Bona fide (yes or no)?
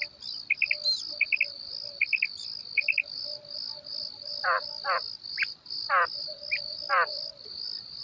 yes